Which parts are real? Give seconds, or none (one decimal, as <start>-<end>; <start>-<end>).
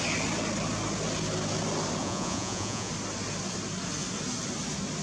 0.0-2.0; 2.9-5.0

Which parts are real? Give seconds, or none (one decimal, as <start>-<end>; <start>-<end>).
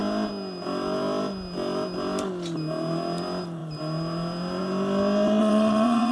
0.0-5.4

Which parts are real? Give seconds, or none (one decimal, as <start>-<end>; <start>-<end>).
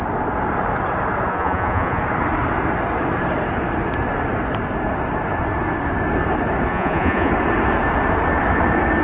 0.0-1.3; 2.0-6.7; 7.3-9.0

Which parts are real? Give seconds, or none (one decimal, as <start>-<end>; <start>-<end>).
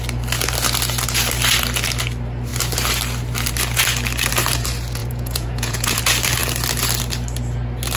0.0-5.0; 6.0-8.0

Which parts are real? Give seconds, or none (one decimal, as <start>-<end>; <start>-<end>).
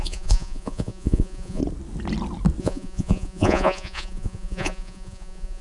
1.6-2.6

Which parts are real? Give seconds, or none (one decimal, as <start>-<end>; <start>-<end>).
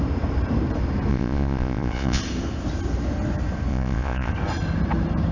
0.0-1.1; 2.2-3.7; 4.3-5.3